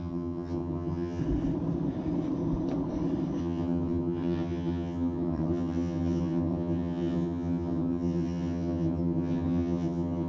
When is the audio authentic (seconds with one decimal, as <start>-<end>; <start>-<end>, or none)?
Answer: 1.2-3.4